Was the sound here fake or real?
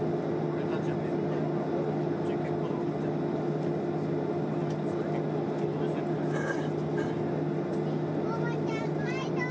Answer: real